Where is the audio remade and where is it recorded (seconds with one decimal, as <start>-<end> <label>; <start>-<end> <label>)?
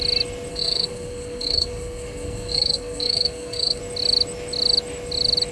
0.0-0.5 recorded; 0.5-3.8 remade; 3.8-5.5 recorded